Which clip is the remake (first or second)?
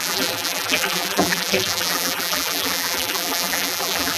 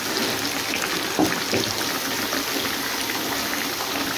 first